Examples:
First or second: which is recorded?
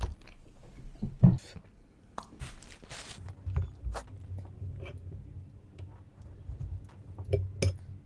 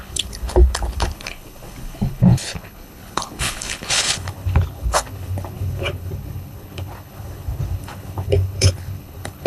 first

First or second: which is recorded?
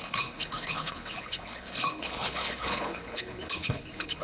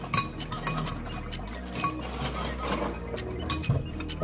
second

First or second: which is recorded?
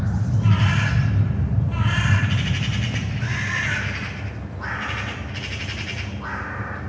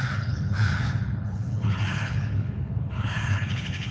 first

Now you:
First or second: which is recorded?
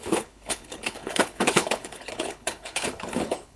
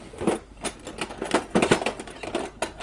second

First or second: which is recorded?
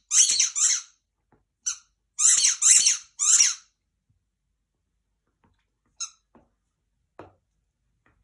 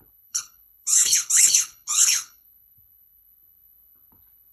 first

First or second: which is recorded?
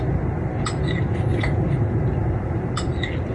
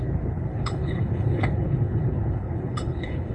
first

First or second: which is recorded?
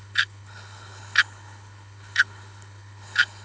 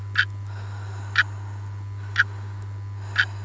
second